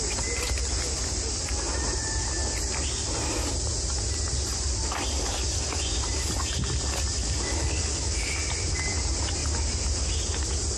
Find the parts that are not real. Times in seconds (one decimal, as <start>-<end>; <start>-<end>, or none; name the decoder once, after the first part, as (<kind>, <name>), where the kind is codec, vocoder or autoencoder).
5.5-6.0 (vocoder, Vocos)